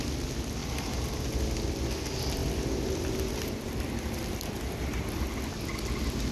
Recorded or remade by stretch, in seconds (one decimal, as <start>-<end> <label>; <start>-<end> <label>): 0.0-0.6 recorded; 0.6-1.2 remade; 1.2-2.4 recorded; 2.4-6.3 remade